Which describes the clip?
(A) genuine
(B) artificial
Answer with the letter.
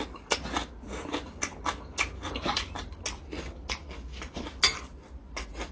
A